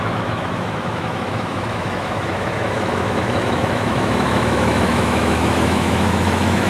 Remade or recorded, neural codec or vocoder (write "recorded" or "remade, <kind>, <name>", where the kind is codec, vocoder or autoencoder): remade, autoencoder, DAC-VAE